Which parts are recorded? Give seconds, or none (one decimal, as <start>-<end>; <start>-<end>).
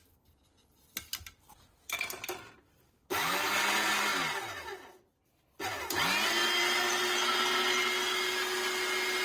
0.0-9.2